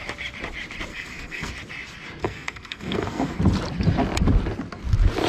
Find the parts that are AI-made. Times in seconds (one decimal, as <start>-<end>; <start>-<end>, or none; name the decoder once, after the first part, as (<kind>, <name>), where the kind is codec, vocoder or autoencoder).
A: 0.9-1.5 (codec, SNAC); 2.2-3.4